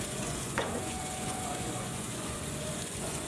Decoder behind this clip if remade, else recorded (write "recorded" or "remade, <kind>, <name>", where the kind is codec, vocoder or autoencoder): remade, vocoder, Vocos